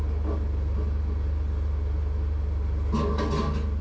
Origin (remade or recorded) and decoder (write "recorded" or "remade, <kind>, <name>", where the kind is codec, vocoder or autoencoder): recorded